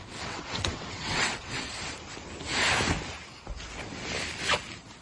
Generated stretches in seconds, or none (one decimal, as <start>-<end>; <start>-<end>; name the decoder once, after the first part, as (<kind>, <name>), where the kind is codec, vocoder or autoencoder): 0.0-1.7 (vocoder, WaveNeXt)